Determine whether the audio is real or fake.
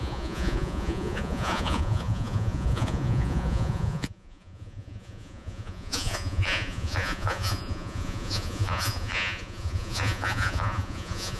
fake